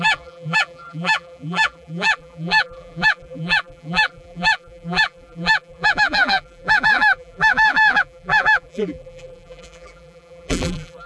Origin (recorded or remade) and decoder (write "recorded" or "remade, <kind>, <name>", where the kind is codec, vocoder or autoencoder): remade, vocoder, BigVGAN v2